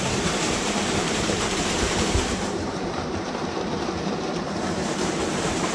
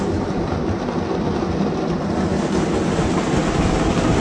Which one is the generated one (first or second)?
first